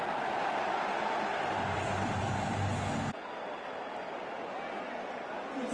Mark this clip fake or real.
real